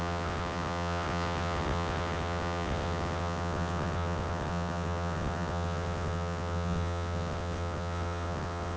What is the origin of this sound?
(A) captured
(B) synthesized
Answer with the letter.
B